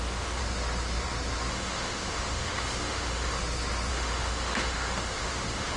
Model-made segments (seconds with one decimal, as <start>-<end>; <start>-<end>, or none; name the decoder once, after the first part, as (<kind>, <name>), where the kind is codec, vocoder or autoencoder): 0.0-0.4 (autoencoder, DAC-VAE); 1.5-3.4; 3.9-5.8